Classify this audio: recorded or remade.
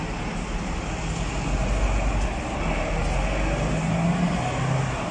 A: recorded